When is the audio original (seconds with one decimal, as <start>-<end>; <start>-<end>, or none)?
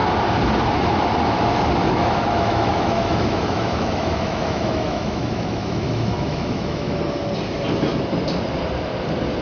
0.0-1.8; 7.0-9.4